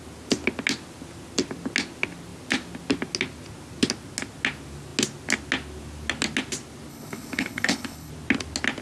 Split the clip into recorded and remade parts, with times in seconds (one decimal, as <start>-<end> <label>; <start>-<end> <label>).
0.0-6.9 recorded; 6.9-8.1 remade; 8.1-8.8 recorded